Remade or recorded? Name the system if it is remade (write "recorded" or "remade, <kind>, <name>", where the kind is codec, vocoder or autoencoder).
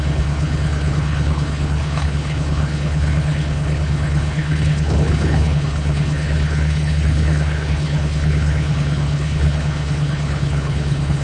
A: remade, codec, HILCodec